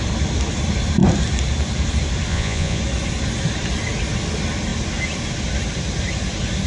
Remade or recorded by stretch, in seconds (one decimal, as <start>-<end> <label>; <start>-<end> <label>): 0.0-2.3 recorded; 2.3-2.8 remade; 2.8-6.7 recorded